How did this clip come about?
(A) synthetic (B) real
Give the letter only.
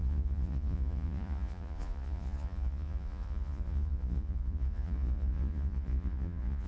A